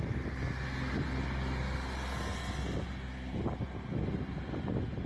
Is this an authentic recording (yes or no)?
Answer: yes